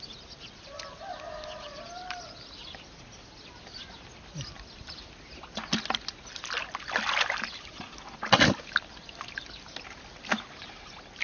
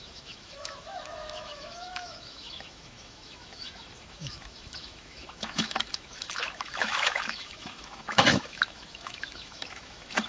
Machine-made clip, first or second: second